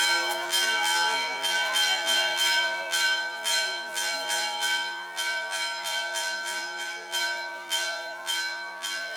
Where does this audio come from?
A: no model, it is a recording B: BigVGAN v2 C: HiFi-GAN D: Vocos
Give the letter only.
B